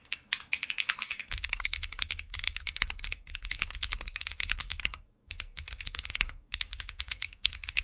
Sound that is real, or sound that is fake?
fake